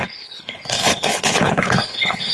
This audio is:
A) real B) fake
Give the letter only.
B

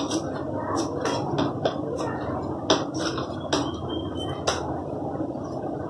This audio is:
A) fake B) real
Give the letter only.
B